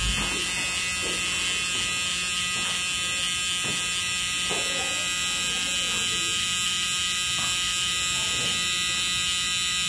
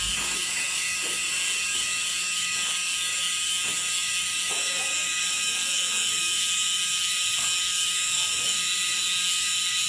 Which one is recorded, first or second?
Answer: first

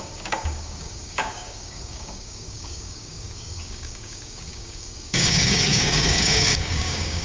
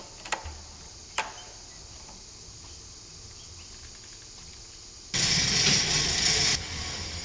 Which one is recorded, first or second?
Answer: second